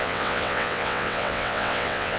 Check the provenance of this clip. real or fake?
fake